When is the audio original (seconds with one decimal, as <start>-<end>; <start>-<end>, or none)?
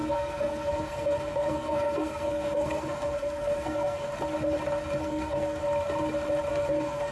4.1-5.0; 5.6-6.5